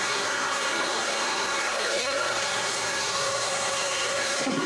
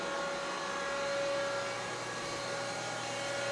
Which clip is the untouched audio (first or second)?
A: second